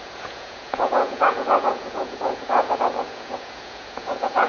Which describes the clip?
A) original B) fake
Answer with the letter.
B